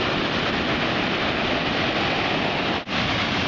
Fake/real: real